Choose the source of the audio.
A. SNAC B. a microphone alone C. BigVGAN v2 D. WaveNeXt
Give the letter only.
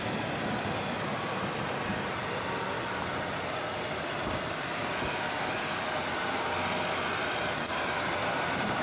C